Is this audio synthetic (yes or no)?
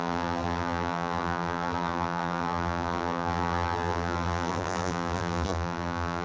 yes